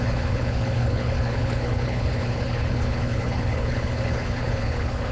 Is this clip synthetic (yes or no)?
yes